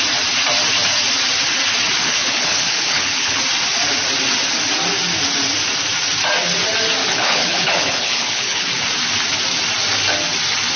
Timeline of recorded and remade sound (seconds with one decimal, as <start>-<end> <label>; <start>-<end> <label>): 0.0-2.0 recorded; 2.0-3.4 remade; 3.4-7.0 recorded; 7.0-8.8 remade; 8.8-10.8 recorded